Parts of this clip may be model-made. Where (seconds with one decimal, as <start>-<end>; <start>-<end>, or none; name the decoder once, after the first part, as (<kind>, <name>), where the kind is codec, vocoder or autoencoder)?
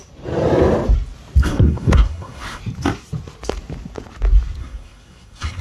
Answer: 1.4-2.6 (codec, SNAC); 4.6-5.6